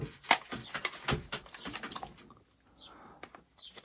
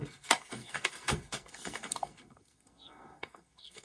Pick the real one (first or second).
first